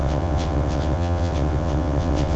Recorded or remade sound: remade